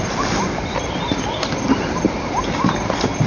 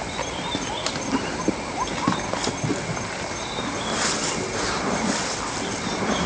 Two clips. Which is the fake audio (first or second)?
first